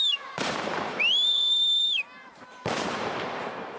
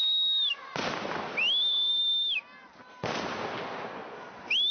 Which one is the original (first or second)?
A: second